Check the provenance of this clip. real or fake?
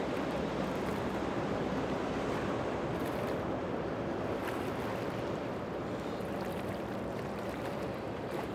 fake